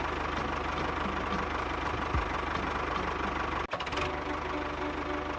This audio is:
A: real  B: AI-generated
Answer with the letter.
A